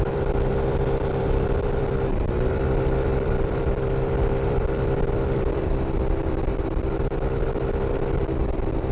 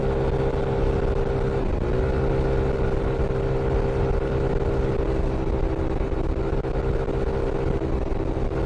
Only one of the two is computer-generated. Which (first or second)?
first